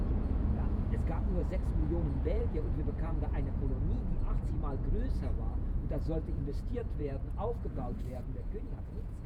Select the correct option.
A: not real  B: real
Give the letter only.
A